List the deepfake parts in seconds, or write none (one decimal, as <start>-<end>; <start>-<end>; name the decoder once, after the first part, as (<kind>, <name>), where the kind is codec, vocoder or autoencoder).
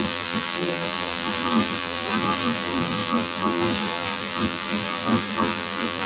0.0-6.1 (vocoder, BigVGAN v2)